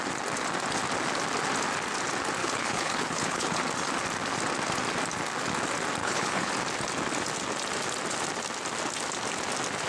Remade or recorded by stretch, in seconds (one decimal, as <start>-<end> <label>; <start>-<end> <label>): 0.0-2.4 recorded; 2.4-3.6 remade; 3.6-6.0 recorded; 6.0-6.5 remade; 6.5-9.9 recorded